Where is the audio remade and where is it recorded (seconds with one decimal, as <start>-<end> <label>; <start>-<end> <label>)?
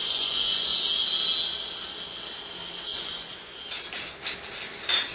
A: 0.0-0.8 remade; 0.8-2.9 recorded; 2.9-3.6 remade; 3.6-5.1 recorded